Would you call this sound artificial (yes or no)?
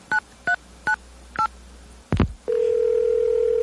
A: no